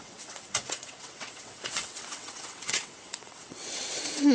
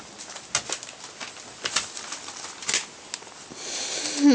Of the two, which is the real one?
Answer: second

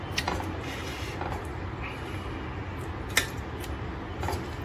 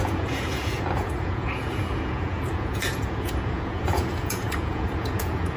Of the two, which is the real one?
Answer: first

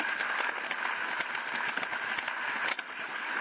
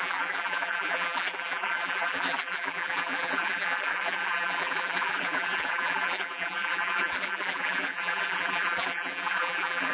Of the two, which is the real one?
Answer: first